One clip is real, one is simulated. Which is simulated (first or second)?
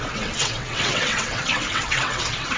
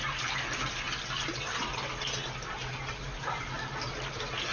first